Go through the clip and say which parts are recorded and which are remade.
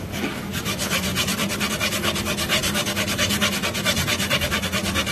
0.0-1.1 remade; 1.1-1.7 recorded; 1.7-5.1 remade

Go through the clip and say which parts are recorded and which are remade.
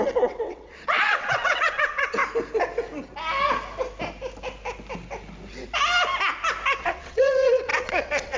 0.0-2.2 remade; 2.2-6.8 recorded; 6.8-8.4 remade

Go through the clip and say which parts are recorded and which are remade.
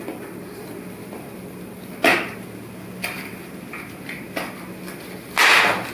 0.0-5.9 recorded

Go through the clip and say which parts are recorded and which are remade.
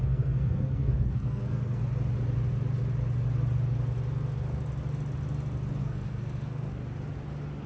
0.0-1.8 remade; 1.8-5.8 recorded; 5.8-6.8 remade; 6.8-7.7 recorded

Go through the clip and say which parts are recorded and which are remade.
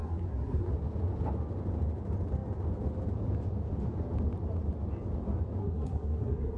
0.0-0.7 remade; 0.7-5.6 recorded; 5.6-6.6 remade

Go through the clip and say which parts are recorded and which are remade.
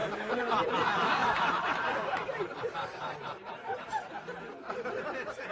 0.0-1.2 recorded; 1.2-4.4 remade; 4.4-5.5 recorded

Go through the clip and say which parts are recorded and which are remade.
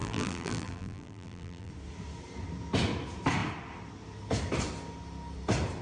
0.0-1.7 remade; 1.7-5.8 recorded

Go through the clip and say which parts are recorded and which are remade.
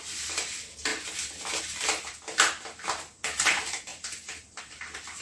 0.0-0.9 remade; 0.9-1.6 recorded; 1.6-5.2 remade